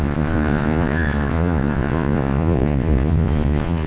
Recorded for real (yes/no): no